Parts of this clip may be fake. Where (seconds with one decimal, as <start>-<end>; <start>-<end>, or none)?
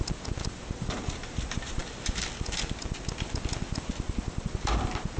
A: none